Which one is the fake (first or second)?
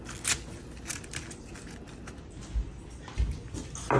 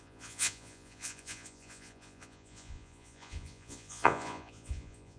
second